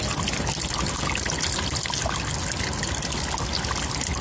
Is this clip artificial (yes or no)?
no